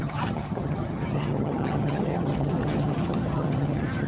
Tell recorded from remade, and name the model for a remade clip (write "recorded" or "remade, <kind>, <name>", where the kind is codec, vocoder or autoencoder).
remade, vocoder, HiFi-GAN